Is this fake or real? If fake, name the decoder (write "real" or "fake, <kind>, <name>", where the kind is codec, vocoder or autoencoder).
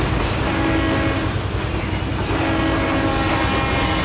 real